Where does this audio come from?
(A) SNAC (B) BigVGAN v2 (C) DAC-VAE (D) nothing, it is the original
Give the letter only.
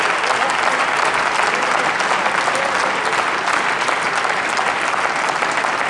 D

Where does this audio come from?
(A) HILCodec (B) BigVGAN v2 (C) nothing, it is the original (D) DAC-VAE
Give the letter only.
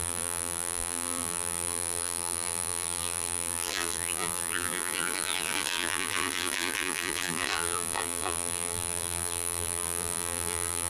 B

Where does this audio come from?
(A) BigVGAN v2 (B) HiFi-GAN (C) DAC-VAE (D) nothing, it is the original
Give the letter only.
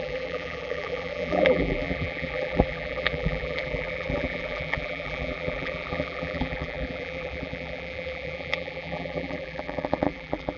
A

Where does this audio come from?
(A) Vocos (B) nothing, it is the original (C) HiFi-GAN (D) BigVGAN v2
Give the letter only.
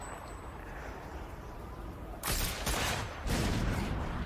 D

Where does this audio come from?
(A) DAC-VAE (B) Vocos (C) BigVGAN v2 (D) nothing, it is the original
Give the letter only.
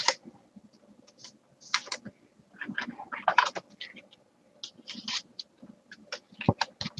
D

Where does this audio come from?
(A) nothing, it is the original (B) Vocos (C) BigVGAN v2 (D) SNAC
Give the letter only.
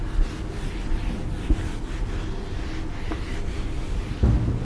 A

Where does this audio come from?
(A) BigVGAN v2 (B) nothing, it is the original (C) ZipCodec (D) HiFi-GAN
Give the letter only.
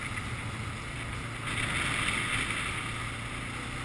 B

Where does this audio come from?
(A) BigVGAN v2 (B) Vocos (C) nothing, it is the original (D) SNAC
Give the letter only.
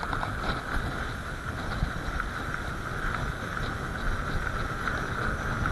C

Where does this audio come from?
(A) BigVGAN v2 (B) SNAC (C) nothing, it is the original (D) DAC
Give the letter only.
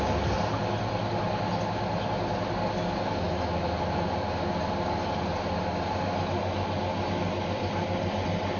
C